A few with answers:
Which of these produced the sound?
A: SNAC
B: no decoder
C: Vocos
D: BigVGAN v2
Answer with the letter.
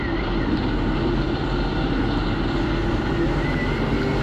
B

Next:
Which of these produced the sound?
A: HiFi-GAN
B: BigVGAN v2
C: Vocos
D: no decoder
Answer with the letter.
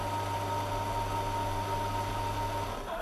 D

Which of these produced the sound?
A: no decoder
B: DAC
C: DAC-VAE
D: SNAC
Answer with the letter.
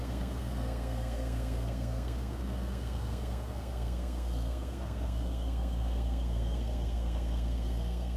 D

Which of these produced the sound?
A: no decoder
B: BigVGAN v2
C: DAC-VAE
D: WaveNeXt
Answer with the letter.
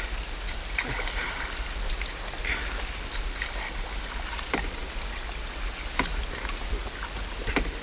A